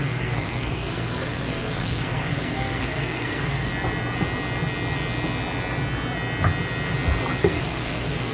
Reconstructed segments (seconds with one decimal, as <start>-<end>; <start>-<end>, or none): 0.0-3.7; 7.4-8.3

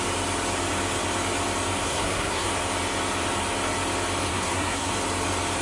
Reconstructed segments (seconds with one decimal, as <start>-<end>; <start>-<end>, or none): 1.8-2.5; 4.3-4.9

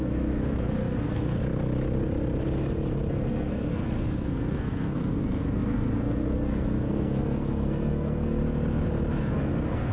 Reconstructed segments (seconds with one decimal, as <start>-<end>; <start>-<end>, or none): 0.0-1.4; 3.1-8.4; 9.2-9.9

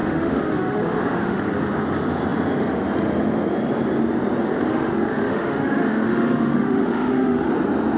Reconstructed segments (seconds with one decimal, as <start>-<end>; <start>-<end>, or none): 0.0-1.4; 4.7-7.5

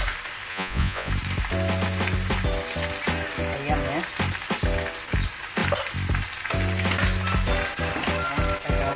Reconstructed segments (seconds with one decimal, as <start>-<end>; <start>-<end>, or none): 0.5-1.1